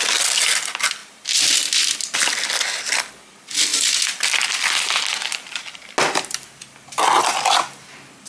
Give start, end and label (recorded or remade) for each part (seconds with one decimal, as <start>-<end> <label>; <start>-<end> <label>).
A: 0.0-8.3 recorded